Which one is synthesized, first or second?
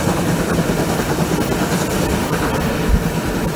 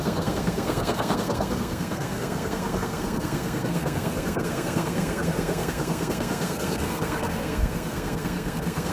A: second